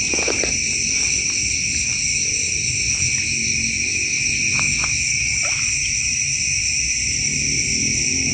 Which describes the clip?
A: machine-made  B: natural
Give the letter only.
B